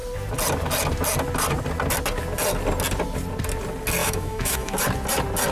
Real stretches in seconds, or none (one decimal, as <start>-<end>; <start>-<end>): 0.0-4.0; 4.8-5.5